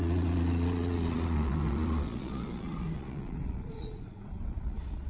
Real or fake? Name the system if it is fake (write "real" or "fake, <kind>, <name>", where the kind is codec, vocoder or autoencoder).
fake, vocoder, Vocos